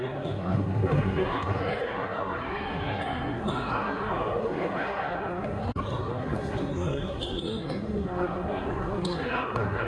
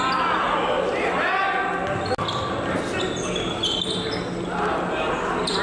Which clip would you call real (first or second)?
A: second